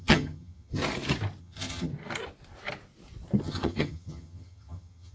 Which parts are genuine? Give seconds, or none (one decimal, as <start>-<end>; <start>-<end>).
0.8-1.4; 1.9-3.4